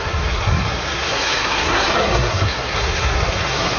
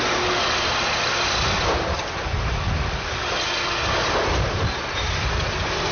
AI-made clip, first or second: first